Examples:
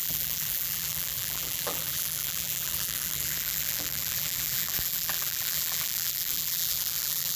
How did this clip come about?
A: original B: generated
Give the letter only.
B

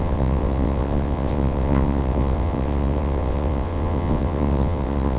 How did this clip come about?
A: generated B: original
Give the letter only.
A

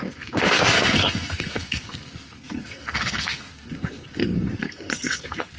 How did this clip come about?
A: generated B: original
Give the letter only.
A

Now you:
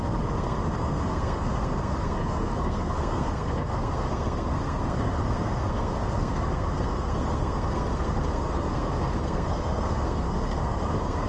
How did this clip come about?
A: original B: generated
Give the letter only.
B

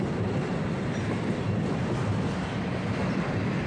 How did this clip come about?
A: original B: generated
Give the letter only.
A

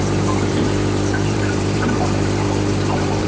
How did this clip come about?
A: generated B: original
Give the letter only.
A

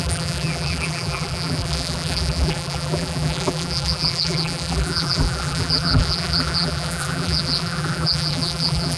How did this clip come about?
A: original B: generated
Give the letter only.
B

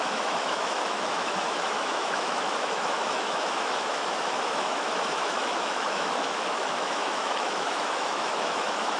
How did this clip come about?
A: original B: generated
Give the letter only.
B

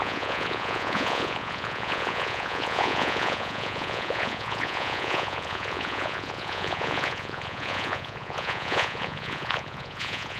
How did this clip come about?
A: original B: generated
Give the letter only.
B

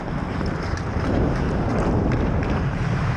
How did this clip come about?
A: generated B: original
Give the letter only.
A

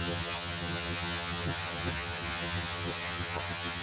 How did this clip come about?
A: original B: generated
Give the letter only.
B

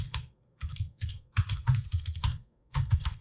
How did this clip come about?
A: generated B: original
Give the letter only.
A